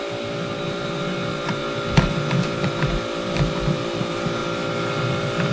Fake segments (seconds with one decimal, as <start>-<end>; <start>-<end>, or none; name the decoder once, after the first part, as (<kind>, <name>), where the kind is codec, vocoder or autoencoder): none